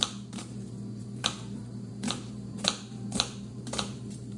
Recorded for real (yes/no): no